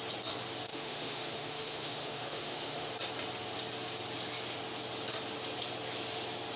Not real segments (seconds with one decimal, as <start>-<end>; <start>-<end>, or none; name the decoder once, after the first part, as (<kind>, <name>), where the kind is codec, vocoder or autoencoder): 0.7-2.9 (autoencoder, DAC-VAE)